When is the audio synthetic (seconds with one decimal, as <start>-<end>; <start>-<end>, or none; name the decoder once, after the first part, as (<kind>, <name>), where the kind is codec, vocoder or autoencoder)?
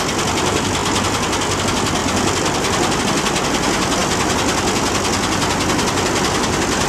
2.0-3.0 (vocoder, BigVGAN v2)